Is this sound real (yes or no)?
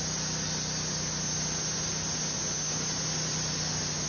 yes